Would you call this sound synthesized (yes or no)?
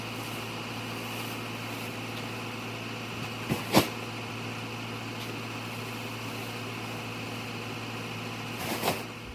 no